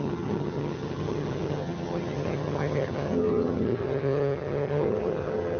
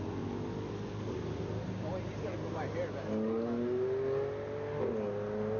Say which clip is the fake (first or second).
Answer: first